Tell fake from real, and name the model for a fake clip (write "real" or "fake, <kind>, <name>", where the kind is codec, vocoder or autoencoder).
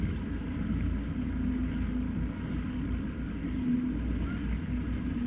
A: real